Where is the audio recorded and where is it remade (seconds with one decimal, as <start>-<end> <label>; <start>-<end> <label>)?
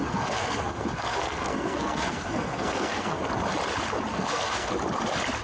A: 0.0-3.2 remade; 3.2-4.1 recorded; 4.1-4.7 remade; 4.7-5.4 recorded